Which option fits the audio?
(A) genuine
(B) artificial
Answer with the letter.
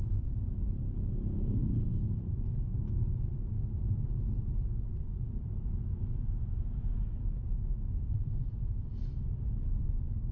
A